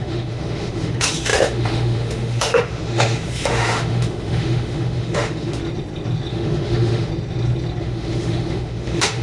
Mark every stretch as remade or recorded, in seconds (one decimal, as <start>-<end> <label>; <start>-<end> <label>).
0.0-5.6 remade; 5.6-6.3 recorded; 6.3-7.1 remade; 7.1-7.8 recorded; 7.8-9.2 remade

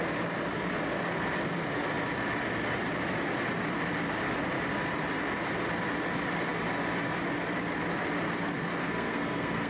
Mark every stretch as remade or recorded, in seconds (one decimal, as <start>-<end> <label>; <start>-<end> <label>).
0.0-8.8 recorded; 8.8-9.7 remade

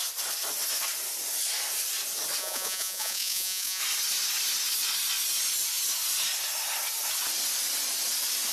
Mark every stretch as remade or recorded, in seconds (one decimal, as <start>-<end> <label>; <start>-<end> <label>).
0.0-2.4 recorded; 2.4-3.8 remade; 3.8-8.5 recorded

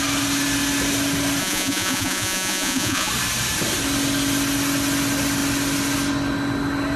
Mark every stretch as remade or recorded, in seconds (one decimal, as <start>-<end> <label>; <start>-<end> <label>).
0.0-1.4 recorded; 1.4-3.1 remade; 3.1-7.0 recorded

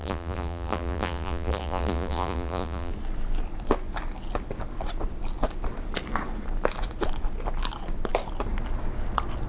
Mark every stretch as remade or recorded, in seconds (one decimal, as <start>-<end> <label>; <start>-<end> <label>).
0.0-2.9 remade; 2.9-9.5 recorded

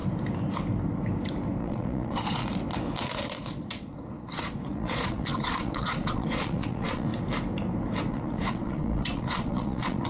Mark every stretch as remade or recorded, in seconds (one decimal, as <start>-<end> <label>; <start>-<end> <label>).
0.0-1.6 recorded; 1.6-2.4 remade; 2.4-3.0 recorded; 3.0-7.1 remade; 7.1-8.1 recorded; 8.1-10.1 remade